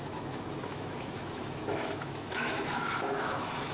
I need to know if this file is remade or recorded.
remade